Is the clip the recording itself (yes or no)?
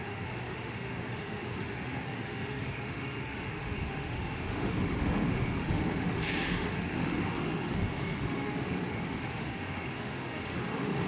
no